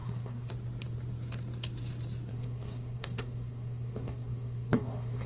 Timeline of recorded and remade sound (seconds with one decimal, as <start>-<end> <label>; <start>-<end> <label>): 0.0-0.5 remade; 0.5-2.3 recorded; 2.3-5.3 remade